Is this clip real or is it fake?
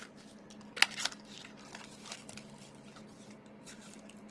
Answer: fake